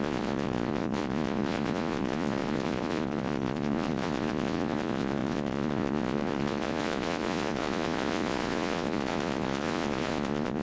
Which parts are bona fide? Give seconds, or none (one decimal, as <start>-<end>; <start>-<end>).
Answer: none